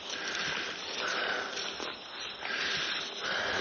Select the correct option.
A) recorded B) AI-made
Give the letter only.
A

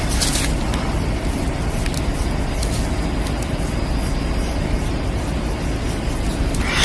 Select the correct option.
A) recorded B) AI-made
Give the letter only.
A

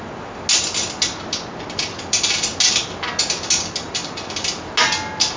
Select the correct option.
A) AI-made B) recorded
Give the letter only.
B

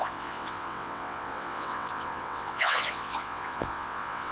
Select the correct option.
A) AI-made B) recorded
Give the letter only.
A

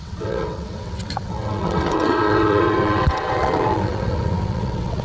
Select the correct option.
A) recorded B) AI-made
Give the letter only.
B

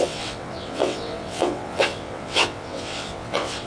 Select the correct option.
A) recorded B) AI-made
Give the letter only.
B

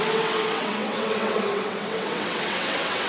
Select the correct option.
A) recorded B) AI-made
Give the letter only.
B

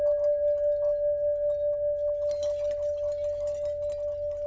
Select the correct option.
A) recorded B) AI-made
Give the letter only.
A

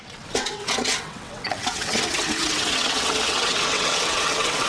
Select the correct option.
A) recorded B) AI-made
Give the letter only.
B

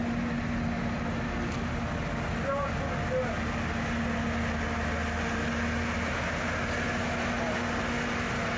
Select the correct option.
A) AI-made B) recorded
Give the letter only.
B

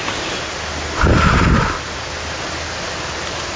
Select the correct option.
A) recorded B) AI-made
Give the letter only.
A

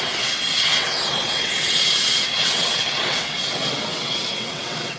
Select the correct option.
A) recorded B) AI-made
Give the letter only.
B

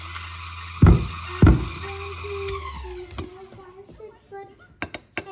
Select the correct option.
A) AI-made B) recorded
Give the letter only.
B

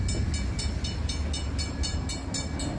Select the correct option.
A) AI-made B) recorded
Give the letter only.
B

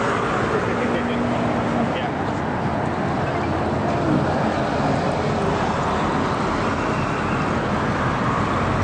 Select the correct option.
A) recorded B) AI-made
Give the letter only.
A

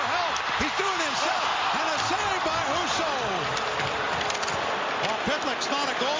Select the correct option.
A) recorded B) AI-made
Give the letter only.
A